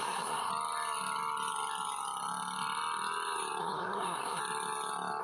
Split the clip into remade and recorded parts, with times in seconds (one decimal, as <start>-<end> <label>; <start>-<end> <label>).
0.0-0.5 remade; 0.5-3.6 recorded; 3.6-4.4 remade; 4.4-5.2 recorded